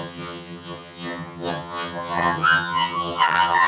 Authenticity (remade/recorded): remade